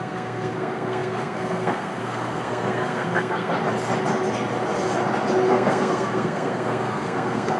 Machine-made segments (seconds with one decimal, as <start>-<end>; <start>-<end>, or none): 0.0-3.5; 5.5-7.6